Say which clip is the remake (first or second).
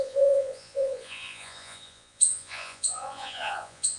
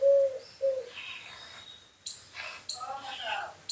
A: first